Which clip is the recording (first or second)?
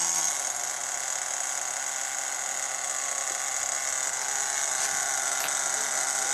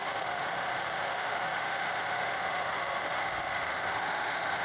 first